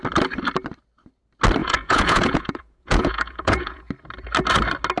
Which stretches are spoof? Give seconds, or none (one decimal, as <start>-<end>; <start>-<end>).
1.6-3.9

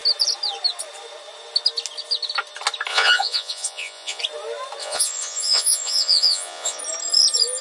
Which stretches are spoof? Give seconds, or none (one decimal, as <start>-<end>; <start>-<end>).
2.9-4.2; 4.8-6.8

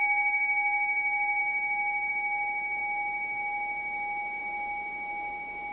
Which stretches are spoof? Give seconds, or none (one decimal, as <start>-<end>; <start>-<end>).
none

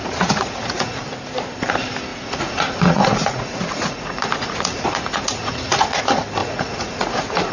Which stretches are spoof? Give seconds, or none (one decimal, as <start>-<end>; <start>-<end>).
0.0-1.0; 2.1-6.0; 6.4-7.5

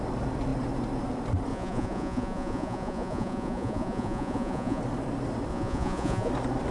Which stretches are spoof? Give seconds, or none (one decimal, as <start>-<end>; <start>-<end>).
1.5-4.8; 5.5-6.3

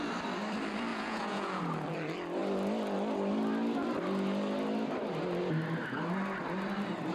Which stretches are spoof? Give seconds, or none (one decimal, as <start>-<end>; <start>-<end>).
0.9-1.6

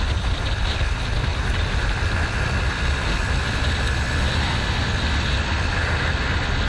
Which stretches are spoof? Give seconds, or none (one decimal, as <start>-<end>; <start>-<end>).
none

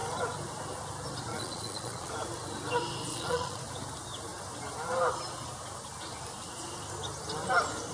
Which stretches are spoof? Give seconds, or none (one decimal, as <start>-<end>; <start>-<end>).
1.3-2.1; 3.1-3.6